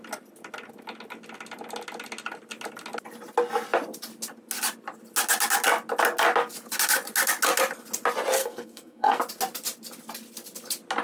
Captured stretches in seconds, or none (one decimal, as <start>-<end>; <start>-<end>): 0.0-8.4; 9.2-11.0

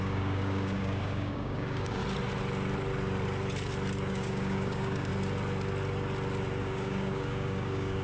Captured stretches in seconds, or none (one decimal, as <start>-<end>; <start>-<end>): 2.0-4.1; 5.1-6.6